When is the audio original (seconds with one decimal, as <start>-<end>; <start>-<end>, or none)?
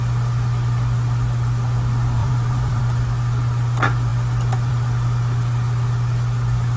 0.0-2.2; 2.8-6.8